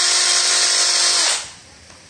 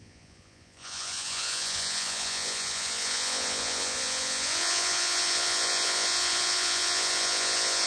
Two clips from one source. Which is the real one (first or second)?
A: first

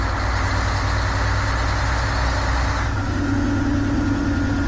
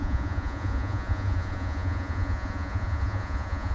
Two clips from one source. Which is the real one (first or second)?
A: first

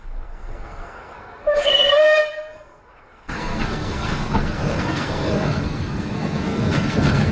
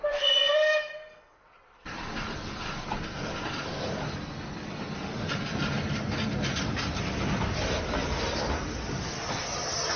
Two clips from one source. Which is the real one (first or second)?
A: second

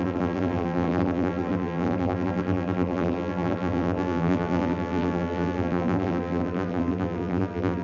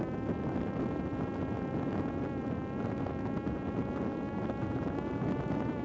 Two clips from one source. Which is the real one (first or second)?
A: second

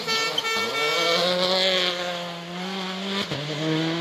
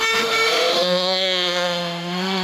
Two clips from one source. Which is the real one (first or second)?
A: first